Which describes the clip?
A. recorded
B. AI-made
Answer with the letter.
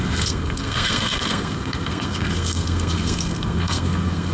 B